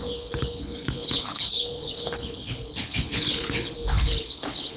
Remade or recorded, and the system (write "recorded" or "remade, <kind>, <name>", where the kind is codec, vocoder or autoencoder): remade, codec, HILCodec